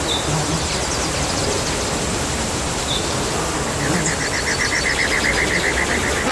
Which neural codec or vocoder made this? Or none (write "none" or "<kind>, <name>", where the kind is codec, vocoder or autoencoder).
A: none